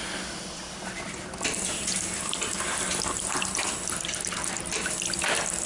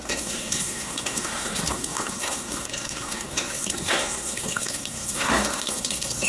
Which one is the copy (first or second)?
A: second